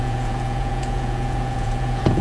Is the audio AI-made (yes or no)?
yes